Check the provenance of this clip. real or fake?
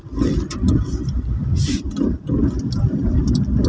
real